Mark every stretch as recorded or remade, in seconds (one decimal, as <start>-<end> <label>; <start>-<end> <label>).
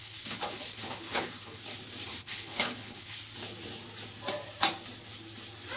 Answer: 0.0-1.6 remade; 1.6-2.1 recorded; 2.1-3.2 remade; 3.2-5.8 recorded